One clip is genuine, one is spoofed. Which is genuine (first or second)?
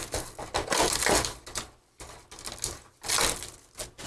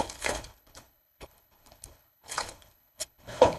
first